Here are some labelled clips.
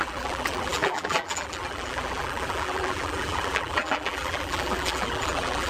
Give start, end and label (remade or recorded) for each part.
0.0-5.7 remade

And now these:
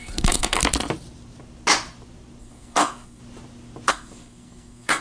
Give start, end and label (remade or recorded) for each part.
0.0-0.6 remade; 0.6-2.4 recorded; 2.4-3.2 remade; 3.2-3.9 recorded; 3.9-5.0 remade